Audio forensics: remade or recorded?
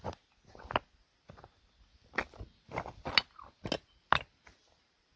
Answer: recorded